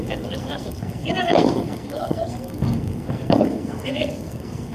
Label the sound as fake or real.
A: fake